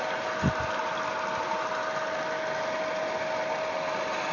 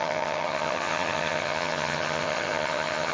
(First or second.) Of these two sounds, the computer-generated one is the second